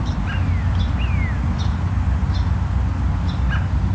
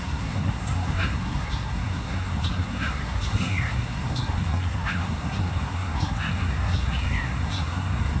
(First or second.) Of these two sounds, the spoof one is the second